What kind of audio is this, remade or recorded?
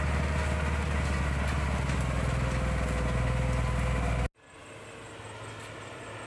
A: recorded